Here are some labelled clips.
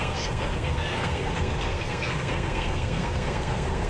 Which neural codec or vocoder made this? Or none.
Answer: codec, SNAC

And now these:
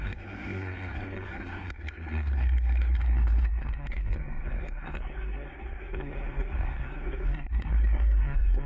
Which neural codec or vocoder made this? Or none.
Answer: codec, SNAC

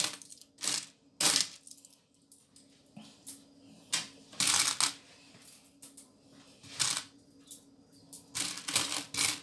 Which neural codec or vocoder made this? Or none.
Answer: none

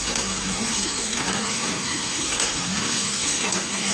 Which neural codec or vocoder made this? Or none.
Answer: codec, SNAC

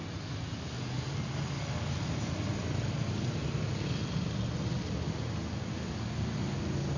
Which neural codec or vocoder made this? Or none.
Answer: none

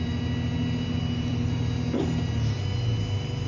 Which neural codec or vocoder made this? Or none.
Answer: none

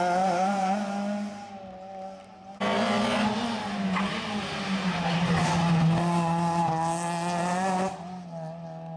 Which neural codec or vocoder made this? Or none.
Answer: none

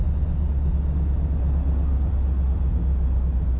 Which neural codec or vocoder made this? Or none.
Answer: none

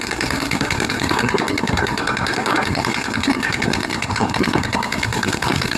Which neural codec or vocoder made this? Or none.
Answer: codec, SNAC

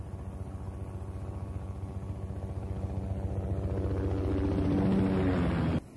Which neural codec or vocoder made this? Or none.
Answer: none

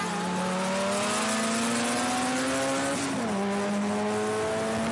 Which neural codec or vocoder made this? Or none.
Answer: none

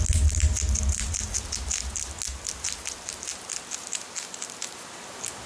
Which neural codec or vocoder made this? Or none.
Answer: none